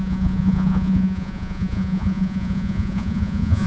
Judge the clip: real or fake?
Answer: fake